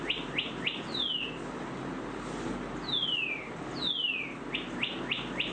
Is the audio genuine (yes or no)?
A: yes